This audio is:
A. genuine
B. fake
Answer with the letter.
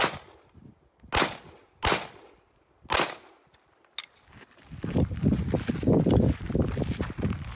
A